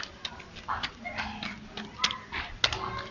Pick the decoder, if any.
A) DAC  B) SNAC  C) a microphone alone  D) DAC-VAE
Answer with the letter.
C